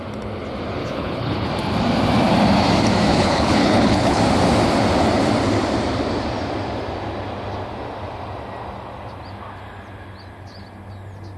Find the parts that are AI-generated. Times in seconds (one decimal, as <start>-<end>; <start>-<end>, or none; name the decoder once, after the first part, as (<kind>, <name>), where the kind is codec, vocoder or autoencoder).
0.8-1.5 (codec, HILCodec); 3.1-4.2